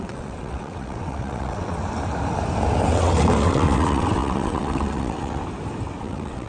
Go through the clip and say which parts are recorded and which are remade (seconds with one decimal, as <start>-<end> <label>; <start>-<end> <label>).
0.0-1.8 remade; 1.8-2.9 recorded; 2.9-5.4 remade; 5.4-6.0 recorded; 6.0-6.5 remade